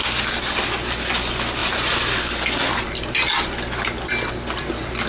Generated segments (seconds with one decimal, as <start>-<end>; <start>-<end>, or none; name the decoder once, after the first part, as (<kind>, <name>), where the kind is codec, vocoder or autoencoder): none